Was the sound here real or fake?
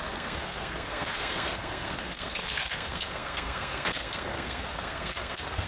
fake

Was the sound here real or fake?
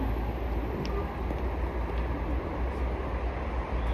real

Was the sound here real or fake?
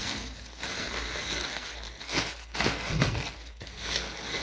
fake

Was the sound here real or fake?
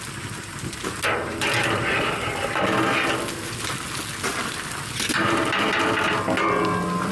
real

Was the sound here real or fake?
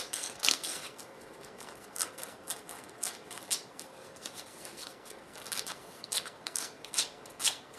fake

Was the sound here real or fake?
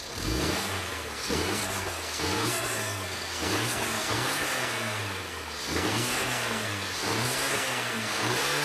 fake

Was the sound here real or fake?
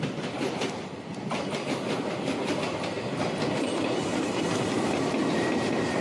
real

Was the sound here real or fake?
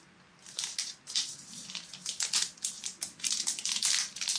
real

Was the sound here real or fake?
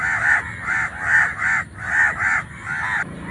real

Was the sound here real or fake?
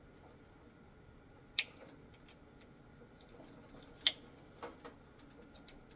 real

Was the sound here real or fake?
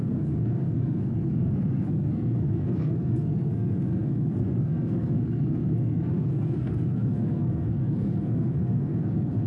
fake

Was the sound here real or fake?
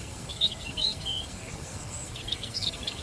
fake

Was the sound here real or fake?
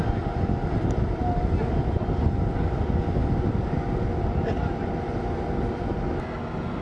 real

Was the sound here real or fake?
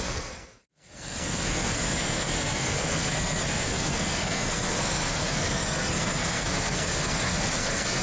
fake